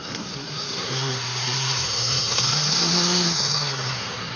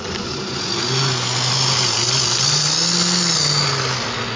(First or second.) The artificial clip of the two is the first